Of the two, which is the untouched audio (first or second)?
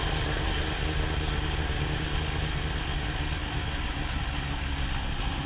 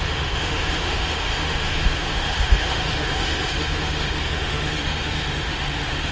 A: first